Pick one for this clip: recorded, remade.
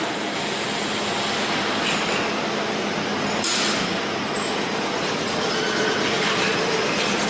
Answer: recorded